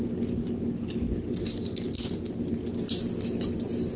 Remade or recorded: recorded